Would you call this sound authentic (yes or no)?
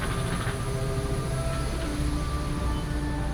yes